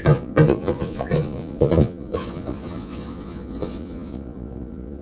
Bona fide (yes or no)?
no